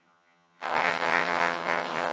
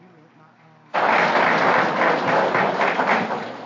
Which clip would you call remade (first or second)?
first